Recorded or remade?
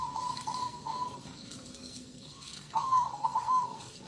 remade